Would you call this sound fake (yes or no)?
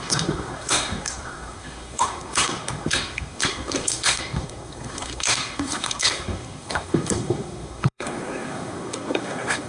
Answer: yes